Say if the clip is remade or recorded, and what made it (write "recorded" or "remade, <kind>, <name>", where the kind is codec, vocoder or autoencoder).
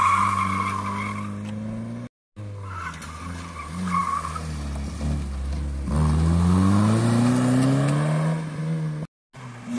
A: recorded